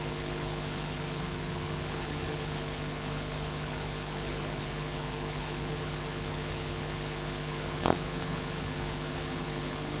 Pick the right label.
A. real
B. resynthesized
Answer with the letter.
B